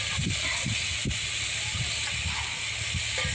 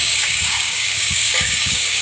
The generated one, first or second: second